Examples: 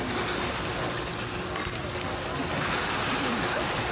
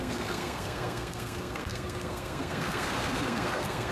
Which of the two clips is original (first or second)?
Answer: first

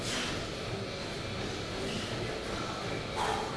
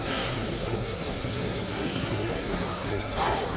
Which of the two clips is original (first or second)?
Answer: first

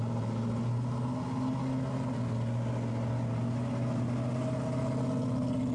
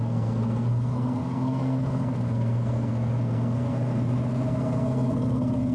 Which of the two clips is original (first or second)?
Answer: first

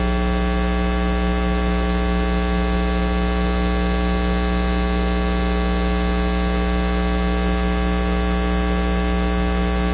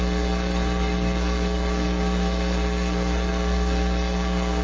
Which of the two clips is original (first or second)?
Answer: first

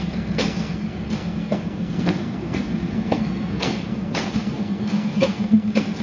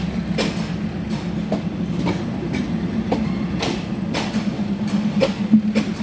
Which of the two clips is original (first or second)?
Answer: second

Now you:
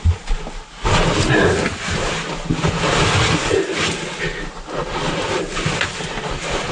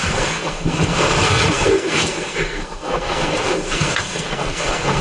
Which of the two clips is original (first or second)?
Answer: first